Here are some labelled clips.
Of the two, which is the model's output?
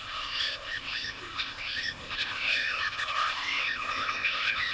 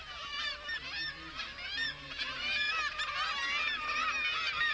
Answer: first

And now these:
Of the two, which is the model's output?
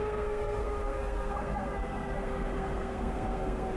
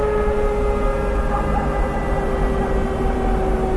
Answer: first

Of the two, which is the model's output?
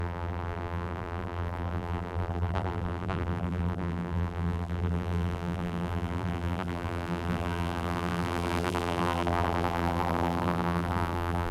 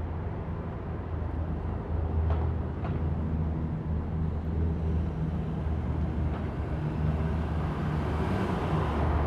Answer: first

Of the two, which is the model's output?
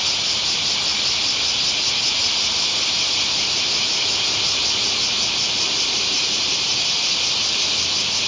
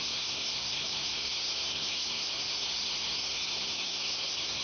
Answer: second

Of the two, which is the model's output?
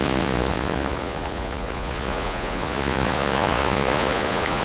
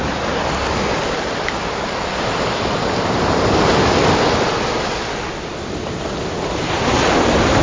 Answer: first